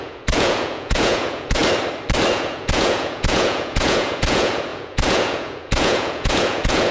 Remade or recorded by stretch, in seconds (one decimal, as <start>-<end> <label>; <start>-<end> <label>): 0.0-1.6 remade; 1.6-2.3 recorded; 2.3-6.9 remade